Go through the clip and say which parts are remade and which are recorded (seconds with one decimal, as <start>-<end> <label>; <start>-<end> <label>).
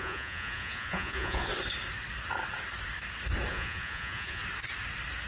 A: 0.0-1.5 remade; 1.5-3.5 recorded; 3.5-4.4 remade; 4.4-5.3 recorded